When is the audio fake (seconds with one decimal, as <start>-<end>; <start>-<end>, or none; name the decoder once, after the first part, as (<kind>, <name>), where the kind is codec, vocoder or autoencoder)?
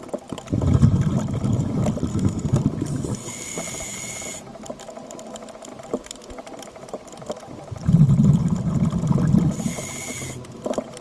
2.1-2.6 (codec, SNAC)